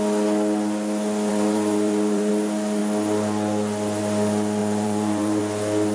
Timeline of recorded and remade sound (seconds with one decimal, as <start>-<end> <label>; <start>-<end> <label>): 0.0-1.3 recorded; 1.3-2.3 remade; 2.3-4.6 recorded; 4.6-5.4 remade; 5.4-5.9 recorded